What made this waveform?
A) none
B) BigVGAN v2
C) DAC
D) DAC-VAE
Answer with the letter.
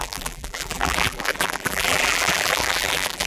B